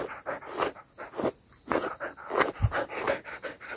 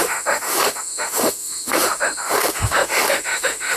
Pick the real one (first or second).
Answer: first